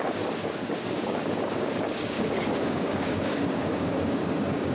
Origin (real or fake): fake